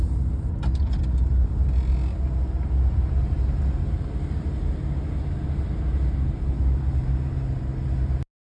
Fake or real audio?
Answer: real